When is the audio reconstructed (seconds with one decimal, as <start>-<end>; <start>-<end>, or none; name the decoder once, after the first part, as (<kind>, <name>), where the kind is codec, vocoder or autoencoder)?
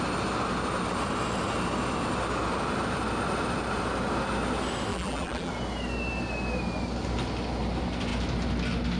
4.9-5.5 (vocoder, BigVGAN v2)